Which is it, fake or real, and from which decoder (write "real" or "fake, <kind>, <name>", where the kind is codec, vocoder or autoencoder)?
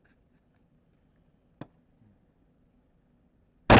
real